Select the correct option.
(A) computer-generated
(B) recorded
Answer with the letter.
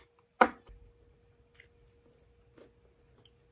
B